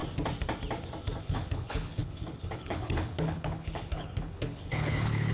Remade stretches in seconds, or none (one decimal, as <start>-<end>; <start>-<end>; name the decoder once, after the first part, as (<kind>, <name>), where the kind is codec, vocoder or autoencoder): 1.2-5.3 (codec, HILCodec)